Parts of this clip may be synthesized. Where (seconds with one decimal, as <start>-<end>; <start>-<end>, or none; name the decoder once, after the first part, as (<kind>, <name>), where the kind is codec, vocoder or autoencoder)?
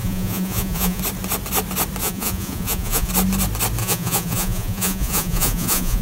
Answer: 0.0-1.0 (vocoder, Vocos); 2.0-3.1; 3.8-6.0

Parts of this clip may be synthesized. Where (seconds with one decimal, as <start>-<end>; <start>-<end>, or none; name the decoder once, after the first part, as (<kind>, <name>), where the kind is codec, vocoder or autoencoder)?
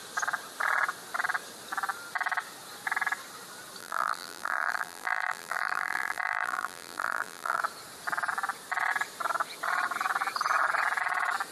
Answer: 3.8-7.6 (vocoder, BigVGAN v2)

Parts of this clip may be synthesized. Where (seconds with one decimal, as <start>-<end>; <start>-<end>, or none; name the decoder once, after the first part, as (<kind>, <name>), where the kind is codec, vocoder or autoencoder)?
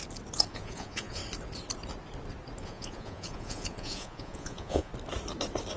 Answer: 0.5-1.2 (vocoder, Vocos); 2.6-4.9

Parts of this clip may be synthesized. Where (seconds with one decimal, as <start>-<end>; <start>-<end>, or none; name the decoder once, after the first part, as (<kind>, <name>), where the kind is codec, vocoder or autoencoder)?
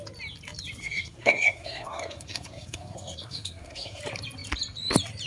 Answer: 0.8-4.0 (codec, SNAC)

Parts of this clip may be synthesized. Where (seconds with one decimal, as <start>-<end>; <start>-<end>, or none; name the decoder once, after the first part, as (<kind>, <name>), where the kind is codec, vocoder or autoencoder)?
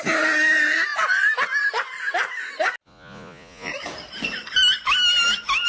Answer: 2.8-3.7 (vocoder, Vocos)